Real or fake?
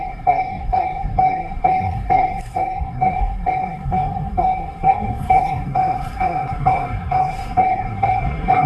fake